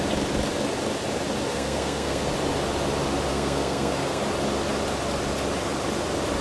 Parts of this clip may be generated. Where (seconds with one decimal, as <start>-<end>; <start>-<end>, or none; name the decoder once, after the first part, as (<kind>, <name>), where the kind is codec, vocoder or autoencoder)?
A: 1.5-2.3 (codec, SNAC); 3.3-4.2

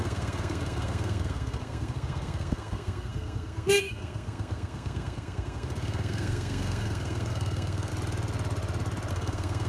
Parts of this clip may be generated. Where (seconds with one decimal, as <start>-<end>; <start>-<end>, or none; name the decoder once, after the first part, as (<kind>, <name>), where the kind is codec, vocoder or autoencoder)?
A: 0.0-7.9 (codec, SNAC); 9.1-9.7

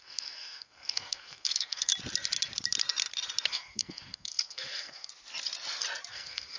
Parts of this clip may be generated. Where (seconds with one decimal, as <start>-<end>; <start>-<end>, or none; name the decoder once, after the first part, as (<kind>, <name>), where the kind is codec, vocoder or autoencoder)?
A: 0.0-1.9 (codec, SNAC); 3.5-5.1; 6.1-6.6

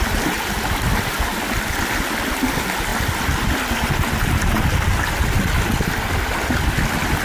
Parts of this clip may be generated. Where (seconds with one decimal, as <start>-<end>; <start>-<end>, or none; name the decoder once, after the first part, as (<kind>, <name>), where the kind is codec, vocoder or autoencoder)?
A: none

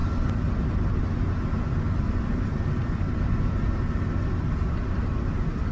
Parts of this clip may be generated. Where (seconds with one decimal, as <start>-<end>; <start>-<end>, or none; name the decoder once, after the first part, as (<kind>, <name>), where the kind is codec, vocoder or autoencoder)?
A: none

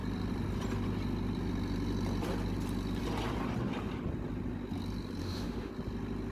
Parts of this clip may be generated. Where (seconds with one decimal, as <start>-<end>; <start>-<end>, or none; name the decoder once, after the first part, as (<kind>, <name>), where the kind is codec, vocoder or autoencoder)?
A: 5.2-5.7 (autoencoder, DAC-VAE)

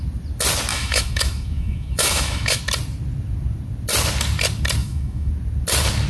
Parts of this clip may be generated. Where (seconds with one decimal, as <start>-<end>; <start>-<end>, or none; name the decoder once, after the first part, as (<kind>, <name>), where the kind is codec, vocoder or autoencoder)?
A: 0.7-2.6 (autoencoder, DAC-VAE); 4.8-5.3